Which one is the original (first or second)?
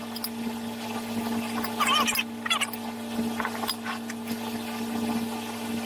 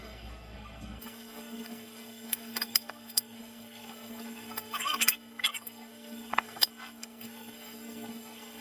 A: first